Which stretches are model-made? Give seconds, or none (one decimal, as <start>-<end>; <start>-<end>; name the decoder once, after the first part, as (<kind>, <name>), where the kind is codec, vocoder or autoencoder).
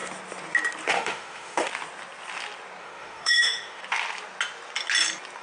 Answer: 0.9-1.7 (autoencoder, DAC-VAE); 2.8-3.8